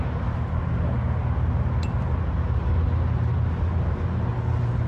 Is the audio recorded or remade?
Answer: recorded